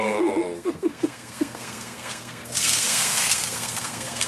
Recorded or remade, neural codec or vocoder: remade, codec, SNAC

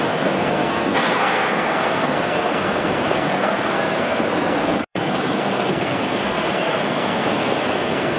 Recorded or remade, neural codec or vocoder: remade, codec, SNAC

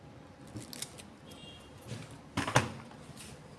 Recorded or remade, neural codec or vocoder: recorded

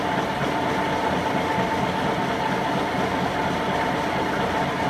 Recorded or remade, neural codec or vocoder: recorded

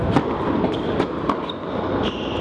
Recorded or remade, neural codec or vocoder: recorded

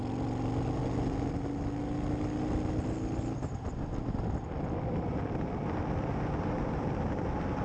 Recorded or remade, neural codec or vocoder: recorded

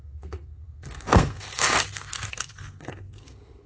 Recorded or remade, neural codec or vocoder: remade, codec, SNAC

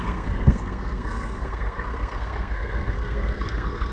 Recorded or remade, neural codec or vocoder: remade, codec, SNAC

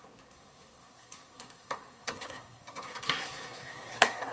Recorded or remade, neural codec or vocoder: remade, codec, SNAC